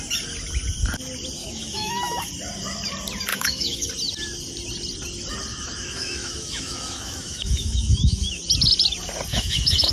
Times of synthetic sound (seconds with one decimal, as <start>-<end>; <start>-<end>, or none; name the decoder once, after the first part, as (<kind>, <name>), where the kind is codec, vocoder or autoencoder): 1.4-2.3 (autoencoder, DAC-VAE); 3.3-3.9; 5.5-8.4; 9.3-9.9